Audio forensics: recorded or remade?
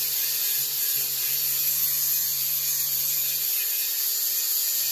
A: recorded